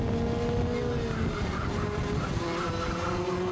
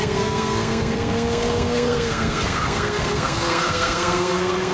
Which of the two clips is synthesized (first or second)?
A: second